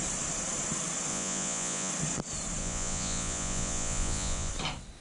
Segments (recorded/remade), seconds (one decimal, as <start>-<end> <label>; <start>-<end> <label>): 0.0-1.1 recorded; 1.1-1.9 remade; 1.9-2.6 recorded; 2.6-4.5 remade; 4.5-5.0 recorded